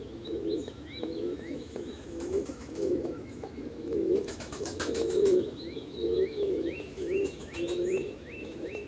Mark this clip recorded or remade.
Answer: remade